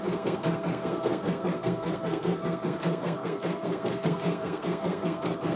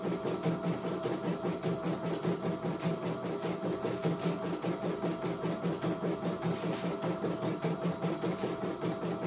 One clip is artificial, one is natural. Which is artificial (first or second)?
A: first